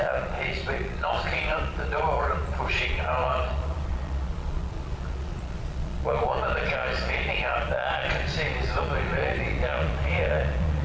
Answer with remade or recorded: remade